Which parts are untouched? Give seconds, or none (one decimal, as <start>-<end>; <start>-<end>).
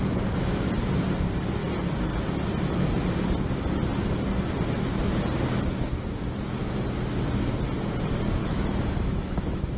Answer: 0.0-8.4